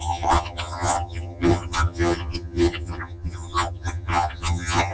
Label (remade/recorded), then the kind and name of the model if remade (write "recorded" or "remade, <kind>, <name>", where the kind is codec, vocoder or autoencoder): remade, vocoder, HiFi-GAN